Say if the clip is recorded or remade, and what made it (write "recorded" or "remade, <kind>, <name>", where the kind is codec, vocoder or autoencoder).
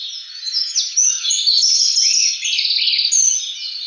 recorded